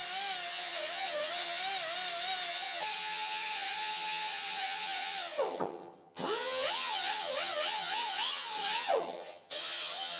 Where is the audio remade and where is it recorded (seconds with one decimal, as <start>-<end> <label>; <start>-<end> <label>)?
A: 0.0-0.5 recorded; 0.5-1.6 remade; 1.6-2.5 recorded; 2.5-10.2 remade